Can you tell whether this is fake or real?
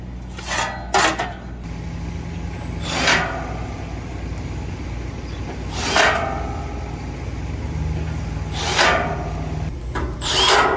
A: real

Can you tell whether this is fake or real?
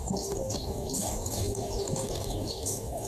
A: fake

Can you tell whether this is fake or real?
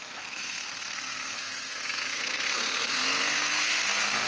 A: fake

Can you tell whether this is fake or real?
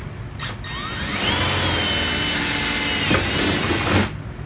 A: real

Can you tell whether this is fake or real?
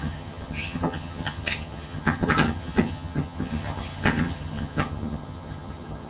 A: fake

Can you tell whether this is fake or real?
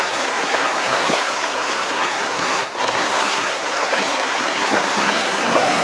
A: fake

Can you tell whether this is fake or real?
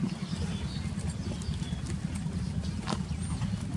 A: real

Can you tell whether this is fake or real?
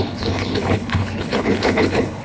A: fake